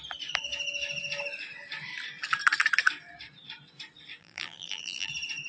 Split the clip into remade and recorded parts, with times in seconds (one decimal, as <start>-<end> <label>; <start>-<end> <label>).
0.0-4.2 recorded; 4.2-5.1 remade; 5.1-5.5 recorded